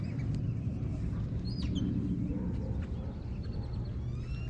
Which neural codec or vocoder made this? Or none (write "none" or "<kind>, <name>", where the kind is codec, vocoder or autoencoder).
none